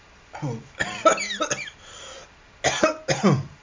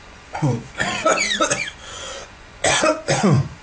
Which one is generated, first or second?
second